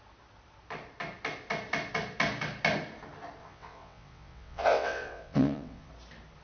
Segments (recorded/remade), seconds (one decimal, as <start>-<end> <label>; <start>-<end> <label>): 0.0-3.4 recorded; 3.4-5.9 remade; 5.9-6.4 recorded